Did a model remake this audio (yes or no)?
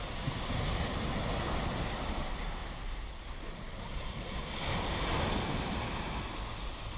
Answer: no